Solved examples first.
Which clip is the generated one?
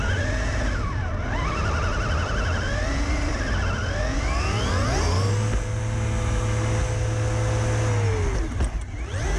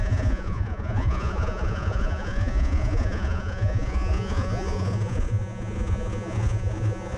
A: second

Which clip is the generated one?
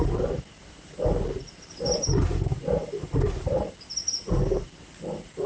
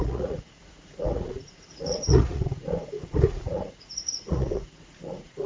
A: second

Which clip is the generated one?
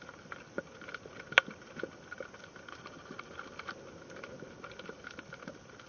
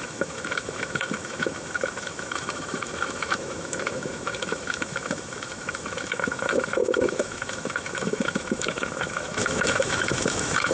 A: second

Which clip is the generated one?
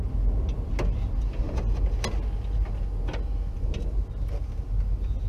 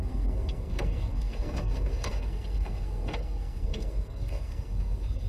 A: second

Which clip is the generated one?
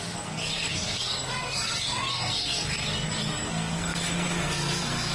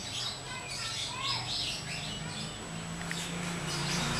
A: first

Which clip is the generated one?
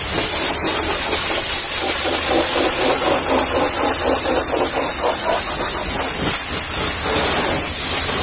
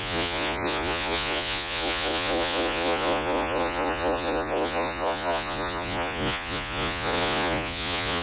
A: second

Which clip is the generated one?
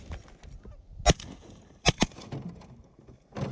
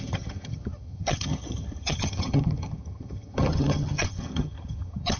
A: second